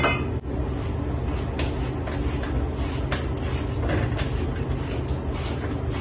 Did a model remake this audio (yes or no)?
no